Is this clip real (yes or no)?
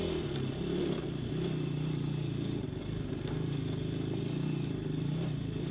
yes